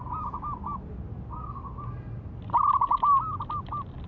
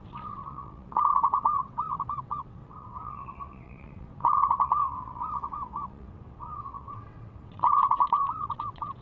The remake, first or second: second